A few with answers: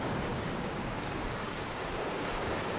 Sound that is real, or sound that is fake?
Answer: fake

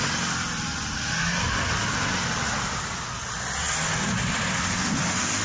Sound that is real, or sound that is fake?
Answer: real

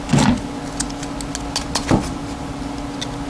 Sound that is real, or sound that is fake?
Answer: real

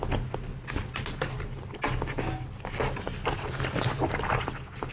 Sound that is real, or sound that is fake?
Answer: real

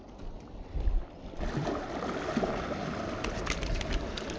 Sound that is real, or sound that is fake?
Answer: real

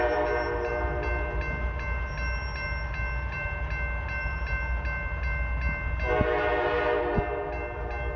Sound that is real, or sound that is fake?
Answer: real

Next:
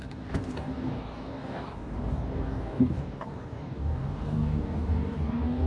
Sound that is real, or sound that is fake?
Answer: fake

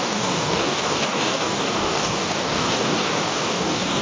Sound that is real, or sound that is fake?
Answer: fake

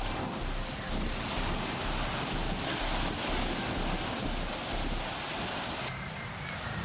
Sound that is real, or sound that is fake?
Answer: real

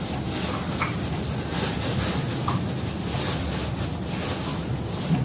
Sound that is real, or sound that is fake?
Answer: real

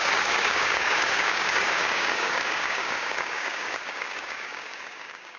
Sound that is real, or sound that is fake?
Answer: fake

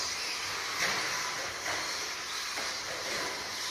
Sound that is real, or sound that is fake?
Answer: real